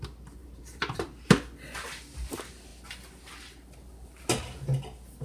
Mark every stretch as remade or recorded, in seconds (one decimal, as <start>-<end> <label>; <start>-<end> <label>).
0.0-0.4 recorded; 0.4-1.1 remade; 1.1-5.2 recorded